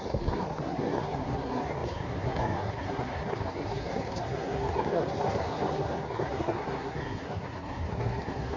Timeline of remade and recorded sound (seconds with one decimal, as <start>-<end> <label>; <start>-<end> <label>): 0.0-8.6 remade